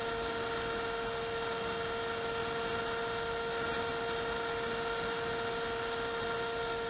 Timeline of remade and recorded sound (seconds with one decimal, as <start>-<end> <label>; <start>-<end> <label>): 0.0-6.9 recorded